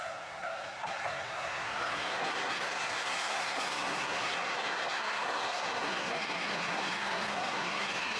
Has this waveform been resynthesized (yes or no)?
yes